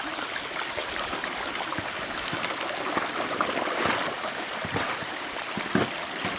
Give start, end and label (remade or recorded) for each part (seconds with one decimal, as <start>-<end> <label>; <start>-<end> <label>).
0.0-0.8 recorded; 0.8-1.8 remade; 1.8-6.4 recorded